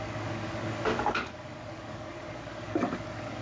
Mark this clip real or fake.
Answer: fake